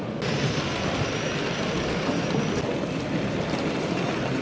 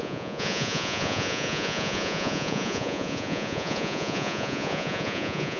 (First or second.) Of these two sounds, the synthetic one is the second